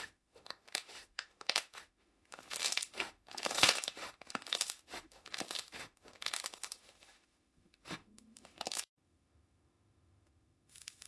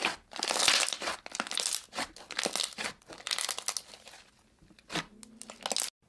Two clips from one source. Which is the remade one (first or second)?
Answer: first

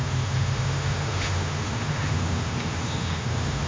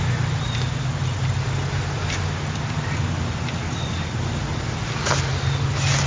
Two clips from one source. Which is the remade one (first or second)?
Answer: first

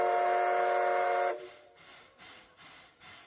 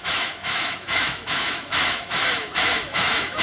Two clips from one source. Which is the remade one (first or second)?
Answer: second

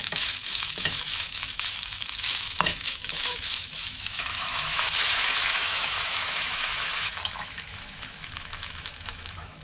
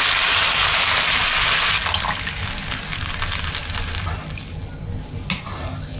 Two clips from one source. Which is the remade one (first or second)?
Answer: first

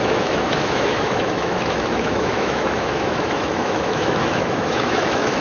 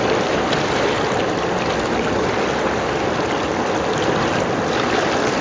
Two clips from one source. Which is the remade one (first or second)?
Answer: first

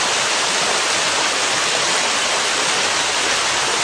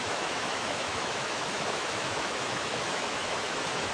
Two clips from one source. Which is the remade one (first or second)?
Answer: second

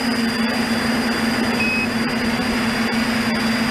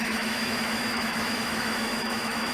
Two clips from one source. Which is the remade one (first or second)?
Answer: second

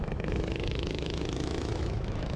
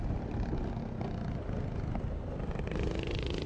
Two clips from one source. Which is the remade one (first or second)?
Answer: first